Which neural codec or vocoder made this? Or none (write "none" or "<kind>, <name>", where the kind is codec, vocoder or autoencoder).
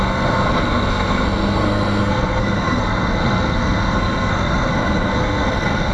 codec, SNAC